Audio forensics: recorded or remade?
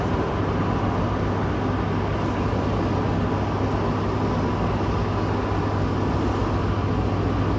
recorded